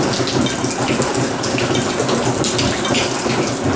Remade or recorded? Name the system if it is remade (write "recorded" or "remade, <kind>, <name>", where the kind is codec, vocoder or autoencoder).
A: recorded